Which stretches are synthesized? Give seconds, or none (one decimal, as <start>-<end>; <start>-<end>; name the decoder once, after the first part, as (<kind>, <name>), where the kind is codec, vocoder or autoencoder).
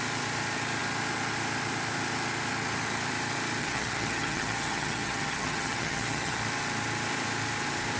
3.6-6.4 (vocoder, HiFi-GAN)